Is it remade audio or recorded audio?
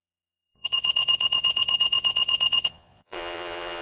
remade